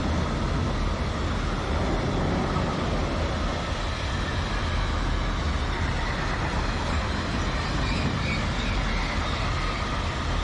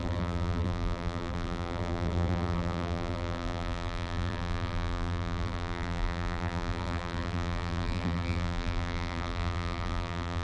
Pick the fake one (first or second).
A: second